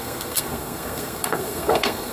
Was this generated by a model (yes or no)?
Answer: yes